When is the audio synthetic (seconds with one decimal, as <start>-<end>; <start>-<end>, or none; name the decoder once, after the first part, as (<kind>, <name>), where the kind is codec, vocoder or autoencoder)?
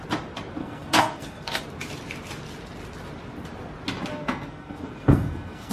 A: 0.6-1.6 (codec, SNAC); 4.1-5.7